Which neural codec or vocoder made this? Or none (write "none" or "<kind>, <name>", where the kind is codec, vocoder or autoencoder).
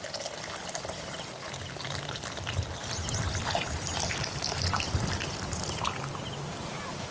vocoder, BigVGAN v2